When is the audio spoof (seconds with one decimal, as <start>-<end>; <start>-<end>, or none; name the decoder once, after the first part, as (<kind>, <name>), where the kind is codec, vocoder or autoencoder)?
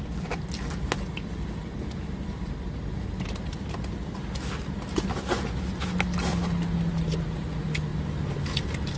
none